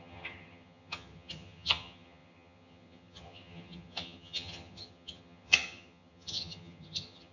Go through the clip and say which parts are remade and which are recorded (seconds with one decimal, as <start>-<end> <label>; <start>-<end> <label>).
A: 0.0-7.3 remade